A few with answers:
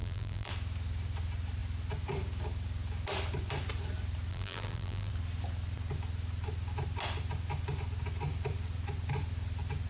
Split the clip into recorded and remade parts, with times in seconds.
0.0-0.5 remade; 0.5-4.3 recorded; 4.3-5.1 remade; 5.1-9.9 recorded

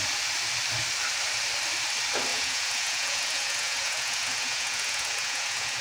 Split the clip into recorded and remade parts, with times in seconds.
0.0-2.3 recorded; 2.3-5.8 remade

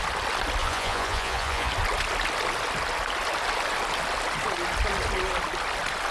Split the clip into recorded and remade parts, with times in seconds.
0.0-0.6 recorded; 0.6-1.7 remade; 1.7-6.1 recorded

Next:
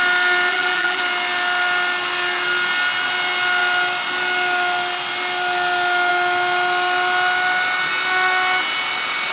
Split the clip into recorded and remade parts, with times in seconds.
0.0-0.5 recorded; 0.5-1.0 remade; 1.0-9.3 recorded

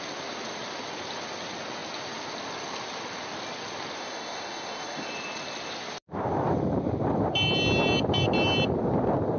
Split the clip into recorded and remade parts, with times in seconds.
0.0-4.0 recorded; 4.0-5.1 remade; 5.1-9.4 recorded

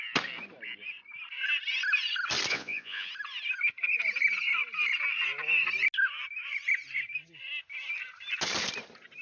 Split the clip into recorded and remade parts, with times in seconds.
0.0-2.5 recorded; 2.5-3.1 remade; 3.1-9.2 recorded

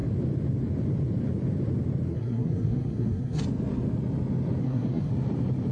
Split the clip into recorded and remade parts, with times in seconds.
0.0-2.1 recorded; 2.1-3.4 remade; 3.4-4.6 recorded; 4.6-5.1 remade; 5.1-5.7 recorded